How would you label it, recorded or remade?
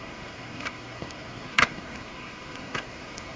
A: remade